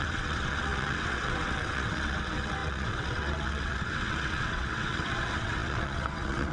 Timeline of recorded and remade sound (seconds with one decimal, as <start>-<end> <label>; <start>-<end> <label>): 0.0-6.5 remade